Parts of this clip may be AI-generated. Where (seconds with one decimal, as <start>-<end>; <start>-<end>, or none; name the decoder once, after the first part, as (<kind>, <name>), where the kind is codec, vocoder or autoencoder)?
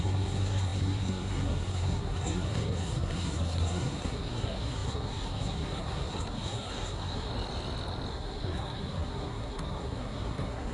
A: 0.0-7.3 (codec, SNAC); 8.1-10.7